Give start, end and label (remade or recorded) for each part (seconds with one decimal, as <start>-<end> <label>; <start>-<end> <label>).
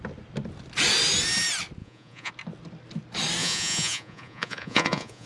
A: 0.0-1.8 recorded; 1.8-2.3 remade; 2.3-3.4 recorded; 3.4-5.3 remade